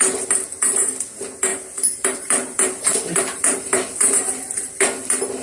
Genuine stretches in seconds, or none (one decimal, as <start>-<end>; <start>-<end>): 0.0-1.5; 4.7-5.4

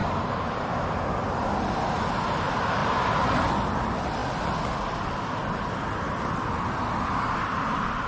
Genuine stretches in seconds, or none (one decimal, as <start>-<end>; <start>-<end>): 0.7-2.8; 3.4-8.1

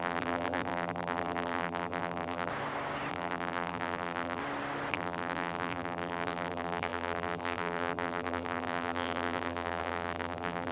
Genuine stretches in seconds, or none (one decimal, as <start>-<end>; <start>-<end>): 2.5-3.1; 4.4-4.9

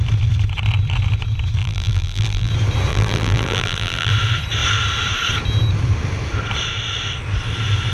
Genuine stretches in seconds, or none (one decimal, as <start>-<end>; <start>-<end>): 0.0-1.6; 2.5-2.9; 4.1-7.9

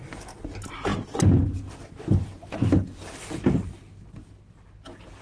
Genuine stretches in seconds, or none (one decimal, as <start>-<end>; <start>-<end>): 0.0-5.2

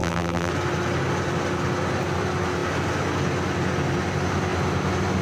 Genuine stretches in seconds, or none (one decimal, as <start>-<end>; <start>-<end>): 0.5-5.2

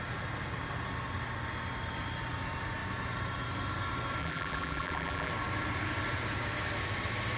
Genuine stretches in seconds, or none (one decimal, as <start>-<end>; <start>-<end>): 0.0-4.2; 5.3-7.4

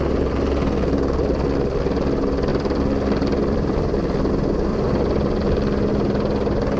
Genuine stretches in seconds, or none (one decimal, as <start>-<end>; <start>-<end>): 0.0-2.5; 4.3-4.7; 5.9-6.8